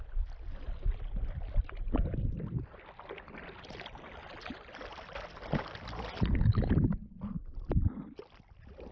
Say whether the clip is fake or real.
real